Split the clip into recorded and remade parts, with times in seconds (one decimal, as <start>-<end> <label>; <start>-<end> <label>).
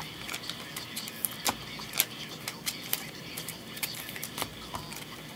0.0-2.9 recorded; 2.9-3.9 remade; 3.9-5.4 recorded